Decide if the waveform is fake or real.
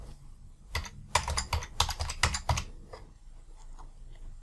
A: real